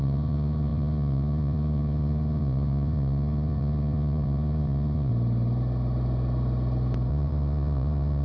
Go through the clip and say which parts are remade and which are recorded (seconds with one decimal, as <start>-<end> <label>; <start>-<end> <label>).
0.0-5.1 remade; 5.1-7.1 recorded; 7.1-8.2 remade